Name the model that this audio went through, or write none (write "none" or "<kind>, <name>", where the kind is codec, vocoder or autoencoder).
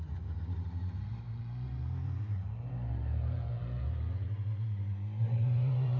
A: none